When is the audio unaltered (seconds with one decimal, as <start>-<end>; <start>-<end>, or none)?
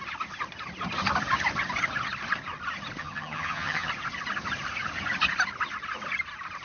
0.0-3.0; 3.9-6.6